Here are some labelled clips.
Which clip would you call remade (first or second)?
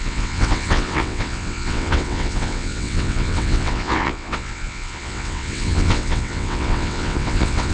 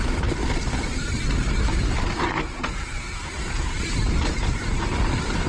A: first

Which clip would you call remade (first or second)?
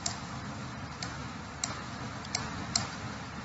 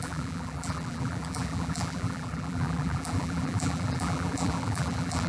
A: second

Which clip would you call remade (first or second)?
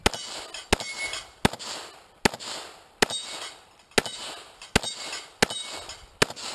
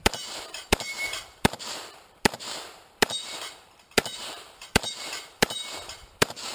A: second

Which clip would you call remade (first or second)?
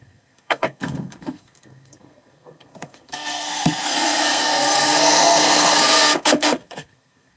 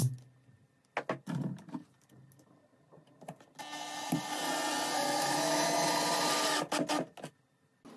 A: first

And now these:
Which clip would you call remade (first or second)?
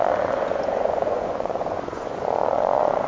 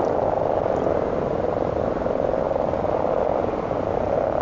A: first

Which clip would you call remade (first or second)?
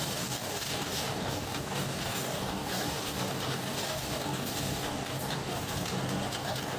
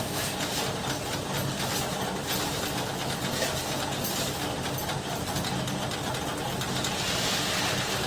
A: first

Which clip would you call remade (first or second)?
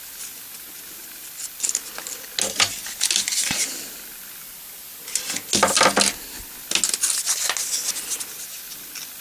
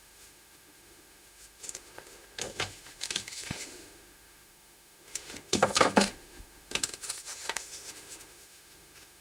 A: second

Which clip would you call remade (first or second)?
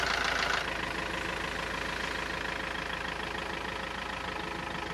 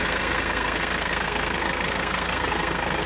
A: second